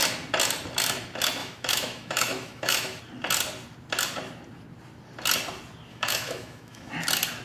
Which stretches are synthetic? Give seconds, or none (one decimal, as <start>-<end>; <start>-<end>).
1.4-3.0; 5.9-6.9